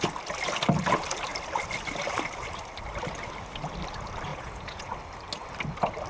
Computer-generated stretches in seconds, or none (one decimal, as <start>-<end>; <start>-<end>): 4.3-4.9